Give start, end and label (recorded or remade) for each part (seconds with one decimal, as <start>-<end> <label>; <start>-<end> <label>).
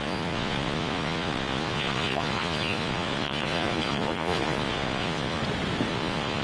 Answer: 0.0-5.4 remade; 5.4-5.9 recorded; 5.9-6.4 remade